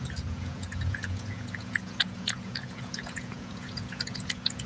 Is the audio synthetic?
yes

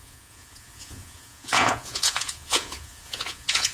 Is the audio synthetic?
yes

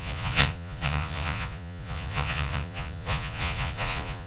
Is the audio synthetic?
yes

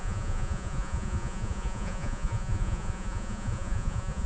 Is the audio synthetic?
yes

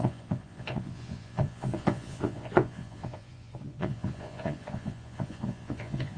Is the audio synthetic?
yes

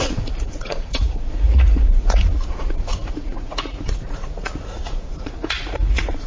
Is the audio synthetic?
yes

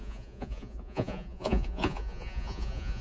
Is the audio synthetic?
yes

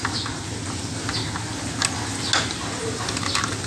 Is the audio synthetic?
no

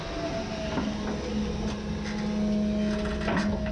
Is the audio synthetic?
no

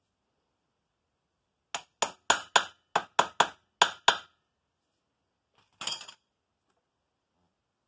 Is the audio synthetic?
no